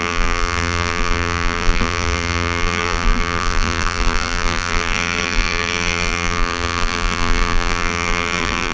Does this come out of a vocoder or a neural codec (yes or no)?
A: yes